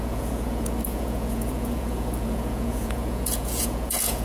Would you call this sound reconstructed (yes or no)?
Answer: yes